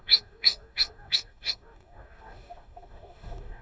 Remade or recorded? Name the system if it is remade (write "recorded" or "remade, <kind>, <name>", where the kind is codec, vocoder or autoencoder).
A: remade, codec, DAC